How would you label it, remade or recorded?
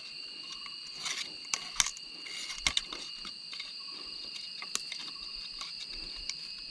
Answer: recorded